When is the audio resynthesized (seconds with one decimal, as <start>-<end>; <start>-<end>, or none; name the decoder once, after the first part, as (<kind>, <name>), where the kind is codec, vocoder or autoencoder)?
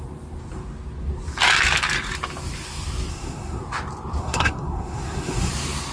3.1-3.6 (codec, SNAC); 4.2-5.5